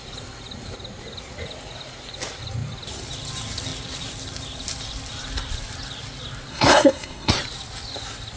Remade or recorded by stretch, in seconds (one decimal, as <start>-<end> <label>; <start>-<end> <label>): 0.0-6.5 recorded; 6.5-7.3 remade; 7.3-8.4 recorded